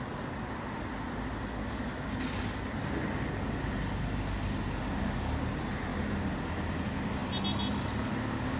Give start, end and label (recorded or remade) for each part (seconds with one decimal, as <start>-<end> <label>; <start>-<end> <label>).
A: 0.0-8.6 recorded